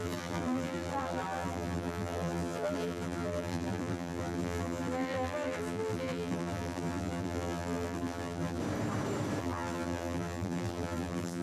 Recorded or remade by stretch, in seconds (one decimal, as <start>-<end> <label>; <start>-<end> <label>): 0.0-8.6 remade; 8.6-9.4 recorded; 9.4-11.4 remade